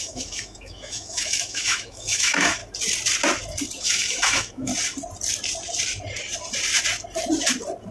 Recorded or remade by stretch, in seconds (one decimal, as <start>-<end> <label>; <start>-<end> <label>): 0.0-2.6 remade; 2.6-3.8 recorded; 3.8-4.7 remade; 4.7-7.9 recorded